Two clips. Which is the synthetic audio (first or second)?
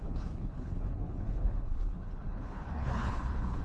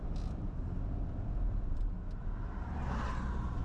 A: first